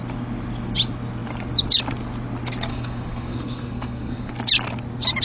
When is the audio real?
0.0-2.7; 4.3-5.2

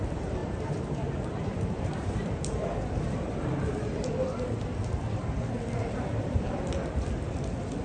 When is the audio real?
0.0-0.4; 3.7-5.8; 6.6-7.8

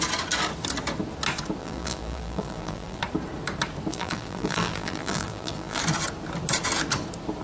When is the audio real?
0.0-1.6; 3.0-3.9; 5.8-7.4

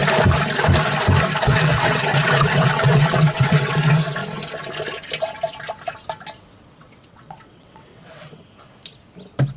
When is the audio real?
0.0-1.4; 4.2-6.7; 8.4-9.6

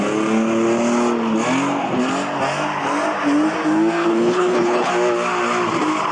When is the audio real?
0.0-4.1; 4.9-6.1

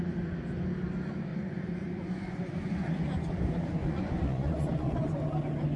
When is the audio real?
0.0-1.3; 3.3-3.8; 5.1-5.8

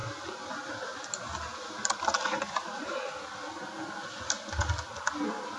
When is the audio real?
1.0-1.5; 2.8-5.6